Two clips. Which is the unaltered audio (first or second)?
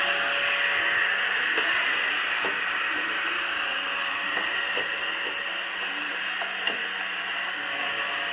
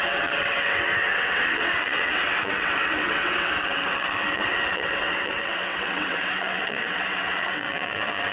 first